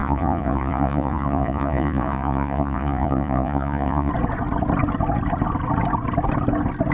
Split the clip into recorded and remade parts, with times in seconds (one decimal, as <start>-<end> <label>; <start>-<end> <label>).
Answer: 0.0-4.1 remade; 4.1-6.9 recorded